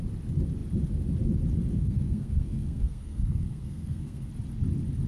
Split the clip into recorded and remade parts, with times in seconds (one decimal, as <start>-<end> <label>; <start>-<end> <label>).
0.0-1.7 recorded; 1.7-4.3 remade; 4.3-5.1 recorded